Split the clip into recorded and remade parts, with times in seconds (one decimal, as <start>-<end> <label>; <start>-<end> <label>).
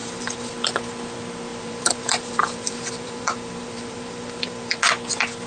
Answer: 0.0-0.5 remade; 0.5-1.5 recorded; 1.5-4.8 remade; 4.8-5.5 recorded